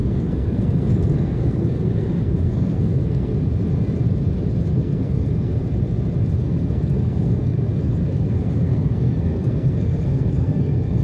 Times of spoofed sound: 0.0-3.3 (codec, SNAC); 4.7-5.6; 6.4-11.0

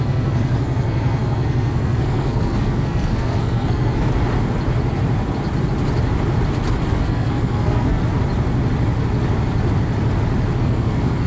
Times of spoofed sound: 0.0-4.1 (codec, SNAC); 6.9-8.0; 10.6-11.3

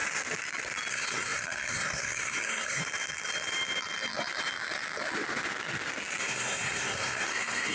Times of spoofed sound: 0.9-2.8 (codec, SNAC); 6.2-7.7

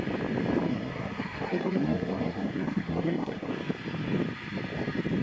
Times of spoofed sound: 0.7-3.5 (codec, SNAC)